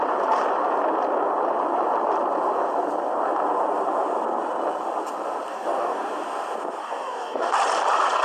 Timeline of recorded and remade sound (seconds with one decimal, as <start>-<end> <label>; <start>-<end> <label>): 0.0-5.5 recorded; 5.5-6.1 remade; 6.1-6.8 recorded; 6.8-7.5 remade; 7.5-8.2 recorded